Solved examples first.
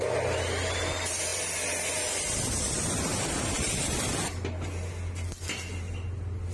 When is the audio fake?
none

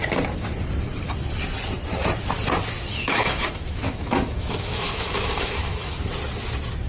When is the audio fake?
2.9-6.1 (autoencoder, DAC-VAE)